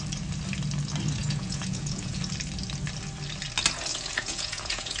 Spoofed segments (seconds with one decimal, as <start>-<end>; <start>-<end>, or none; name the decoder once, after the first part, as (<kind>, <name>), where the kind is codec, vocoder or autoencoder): 1.2-2.2 (vocoder, Vocos); 3.9-5.0